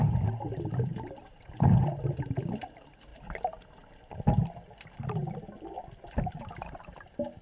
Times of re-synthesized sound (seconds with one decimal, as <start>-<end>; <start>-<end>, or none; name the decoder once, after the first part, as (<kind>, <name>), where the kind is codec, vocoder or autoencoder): 0.9-1.5 (vocoder, BigVGAN v2)